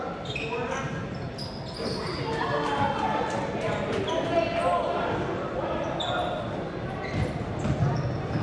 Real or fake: real